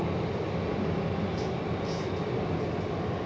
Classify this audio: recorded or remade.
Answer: recorded